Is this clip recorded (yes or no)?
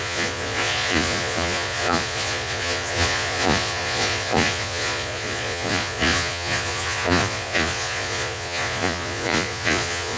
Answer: no